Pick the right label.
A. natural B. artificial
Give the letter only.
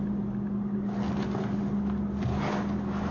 A